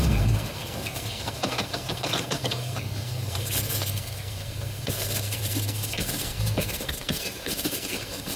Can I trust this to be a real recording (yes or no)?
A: no